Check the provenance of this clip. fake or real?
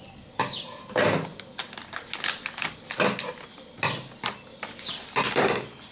real